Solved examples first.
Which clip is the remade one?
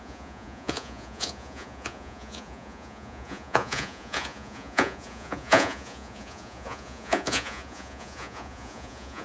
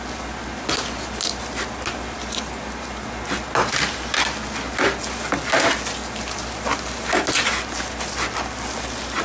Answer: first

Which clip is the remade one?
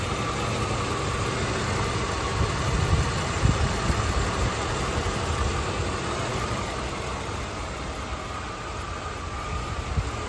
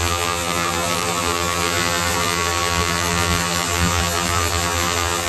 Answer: second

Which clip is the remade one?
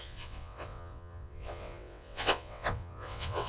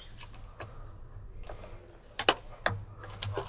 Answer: first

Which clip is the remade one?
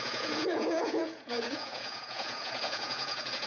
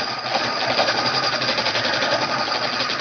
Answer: first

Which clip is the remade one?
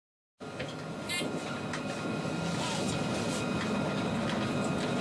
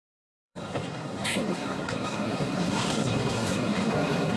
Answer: second